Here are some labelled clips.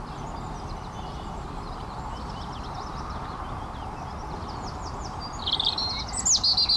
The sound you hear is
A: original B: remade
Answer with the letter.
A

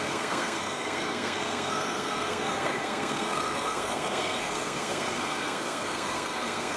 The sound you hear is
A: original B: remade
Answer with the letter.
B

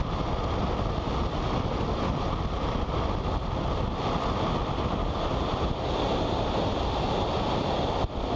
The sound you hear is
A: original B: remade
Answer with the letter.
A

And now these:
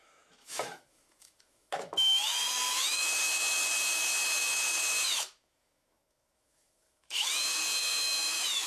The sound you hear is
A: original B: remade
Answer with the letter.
B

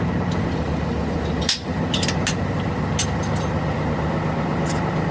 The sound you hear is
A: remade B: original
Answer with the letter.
B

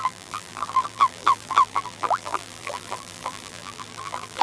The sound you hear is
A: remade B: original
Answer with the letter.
A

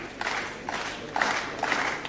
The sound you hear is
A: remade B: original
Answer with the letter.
B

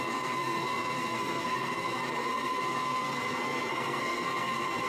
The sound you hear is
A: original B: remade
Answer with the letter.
B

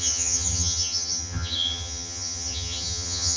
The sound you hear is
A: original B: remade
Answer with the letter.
B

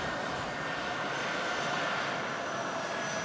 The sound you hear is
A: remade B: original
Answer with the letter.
B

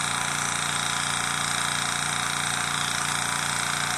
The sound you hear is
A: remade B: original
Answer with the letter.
B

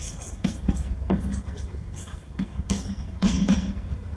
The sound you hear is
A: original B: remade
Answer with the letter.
B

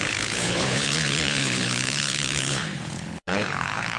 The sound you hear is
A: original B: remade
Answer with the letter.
B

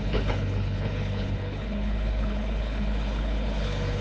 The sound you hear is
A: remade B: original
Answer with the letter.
A